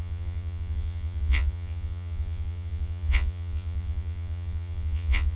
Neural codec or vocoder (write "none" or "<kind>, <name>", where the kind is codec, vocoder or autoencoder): vocoder, Vocos